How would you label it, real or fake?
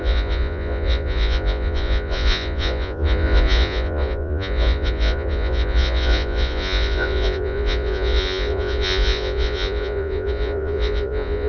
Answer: fake